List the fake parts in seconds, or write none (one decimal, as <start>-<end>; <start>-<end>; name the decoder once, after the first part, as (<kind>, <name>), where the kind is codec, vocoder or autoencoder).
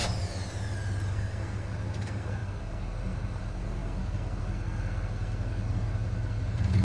1.1-6.8 (codec, SNAC)